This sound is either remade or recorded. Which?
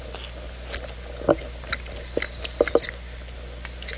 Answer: recorded